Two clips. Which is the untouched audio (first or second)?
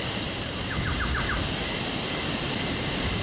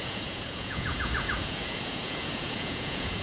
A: first